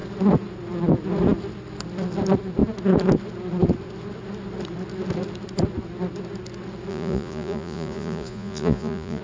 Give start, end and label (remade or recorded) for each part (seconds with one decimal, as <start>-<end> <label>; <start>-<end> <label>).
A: 0.0-6.9 recorded; 6.9-9.2 remade